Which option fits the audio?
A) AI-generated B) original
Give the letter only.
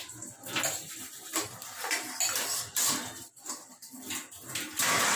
A